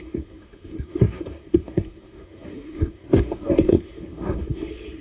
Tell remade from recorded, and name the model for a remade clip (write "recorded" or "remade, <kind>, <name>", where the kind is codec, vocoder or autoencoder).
remade, codec, SNAC